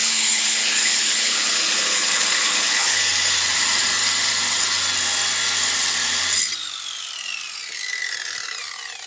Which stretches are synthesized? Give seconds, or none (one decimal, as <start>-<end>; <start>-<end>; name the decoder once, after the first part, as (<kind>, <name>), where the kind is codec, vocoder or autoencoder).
0.0-3.0 (codec, HILCodec)